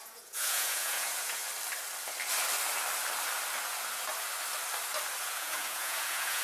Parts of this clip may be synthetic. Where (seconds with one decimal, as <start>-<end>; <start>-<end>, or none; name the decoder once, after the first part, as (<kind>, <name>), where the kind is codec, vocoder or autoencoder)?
0.0-1.4 (vocoder, Vocos); 5.2-6.4